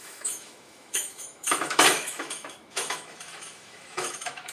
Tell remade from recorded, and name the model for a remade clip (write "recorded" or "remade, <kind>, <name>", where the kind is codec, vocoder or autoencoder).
remade, autoencoder, DAC-VAE